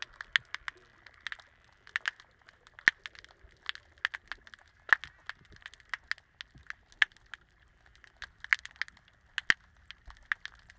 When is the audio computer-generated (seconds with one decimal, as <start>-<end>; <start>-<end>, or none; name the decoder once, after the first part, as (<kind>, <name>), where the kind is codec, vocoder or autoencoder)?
none